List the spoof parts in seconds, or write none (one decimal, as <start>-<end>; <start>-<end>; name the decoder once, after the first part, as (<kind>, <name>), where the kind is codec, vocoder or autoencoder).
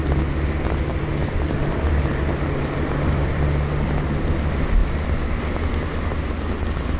1.2-4.3 (vocoder, BigVGAN v2); 4.8-5.4